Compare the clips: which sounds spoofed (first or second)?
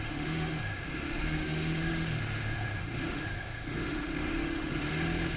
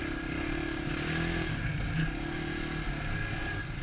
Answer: first